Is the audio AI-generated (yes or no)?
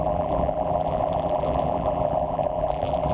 yes